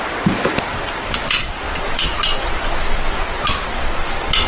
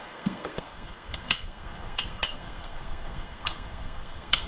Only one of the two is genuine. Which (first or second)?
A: first